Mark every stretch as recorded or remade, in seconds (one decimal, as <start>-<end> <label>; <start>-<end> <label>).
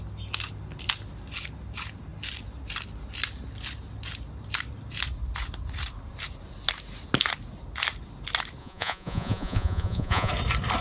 0.0-8.6 recorded; 8.6-10.3 remade; 10.3-10.8 recorded